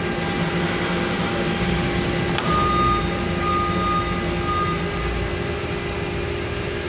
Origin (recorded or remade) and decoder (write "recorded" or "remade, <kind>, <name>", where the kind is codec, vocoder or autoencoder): recorded